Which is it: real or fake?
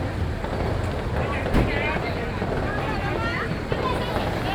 real